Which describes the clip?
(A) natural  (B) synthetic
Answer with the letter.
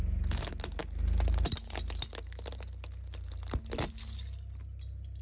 A